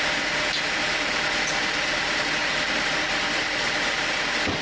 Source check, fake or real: real